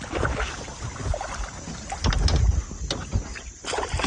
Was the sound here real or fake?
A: real